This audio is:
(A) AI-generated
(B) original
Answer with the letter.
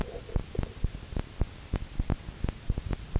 B